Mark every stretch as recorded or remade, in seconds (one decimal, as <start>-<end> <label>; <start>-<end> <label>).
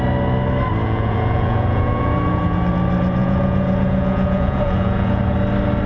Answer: 0.0-0.8 recorded; 0.8-2.6 remade; 2.6-3.2 recorded; 3.2-5.2 remade; 5.2-5.9 recorded